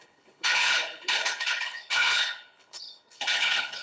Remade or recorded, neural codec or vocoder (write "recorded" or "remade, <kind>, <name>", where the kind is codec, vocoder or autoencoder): remade, codec, HILCodec